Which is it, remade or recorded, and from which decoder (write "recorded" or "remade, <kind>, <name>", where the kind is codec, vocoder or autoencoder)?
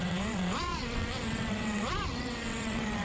remade, vocoder, WaveNeXt